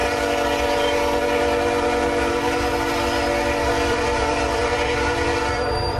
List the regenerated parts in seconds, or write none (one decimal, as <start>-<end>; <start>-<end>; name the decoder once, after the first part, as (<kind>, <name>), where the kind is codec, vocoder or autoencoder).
3.6-4.6 (vocoder, BigVGAN v2); 5.5-6.0